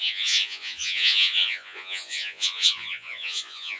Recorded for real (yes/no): no